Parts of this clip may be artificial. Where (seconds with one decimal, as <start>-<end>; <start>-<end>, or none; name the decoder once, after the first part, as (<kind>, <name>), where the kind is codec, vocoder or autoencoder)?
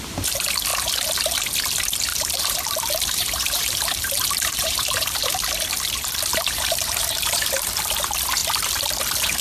2.1-5.5 (vocoder, BigVGAN v2); 6.3-7.5